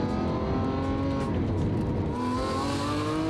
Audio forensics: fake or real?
real